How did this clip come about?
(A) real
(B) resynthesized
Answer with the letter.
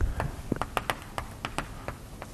A